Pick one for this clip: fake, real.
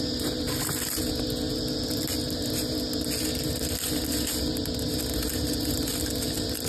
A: real